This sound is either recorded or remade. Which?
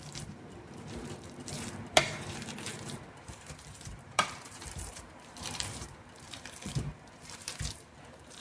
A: remade